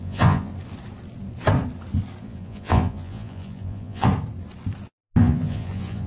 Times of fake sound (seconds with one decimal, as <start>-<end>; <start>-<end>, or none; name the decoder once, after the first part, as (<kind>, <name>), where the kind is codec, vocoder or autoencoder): 0.0-0.5 (vocoder, Vocos); 2.2-4.1; 5.2-6.1